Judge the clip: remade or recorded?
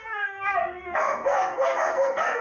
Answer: remade